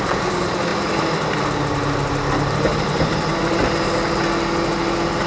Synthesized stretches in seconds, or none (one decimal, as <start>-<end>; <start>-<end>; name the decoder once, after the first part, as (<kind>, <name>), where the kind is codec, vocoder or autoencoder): 2.7-3.6 (vocoder, BigVGAN v2)